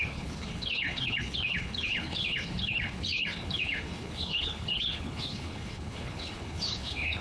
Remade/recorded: remade